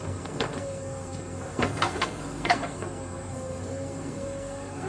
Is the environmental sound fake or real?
fake